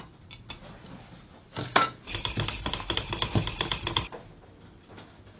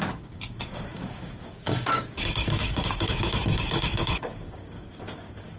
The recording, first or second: first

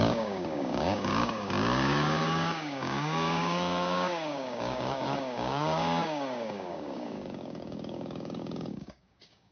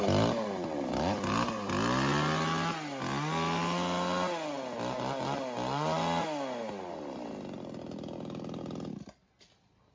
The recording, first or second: second